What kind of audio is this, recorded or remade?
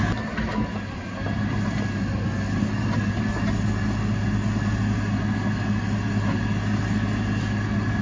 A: recorded